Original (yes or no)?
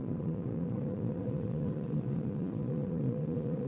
no